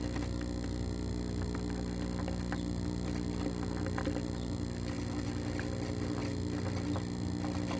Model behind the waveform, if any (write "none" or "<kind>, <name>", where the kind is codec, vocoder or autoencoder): none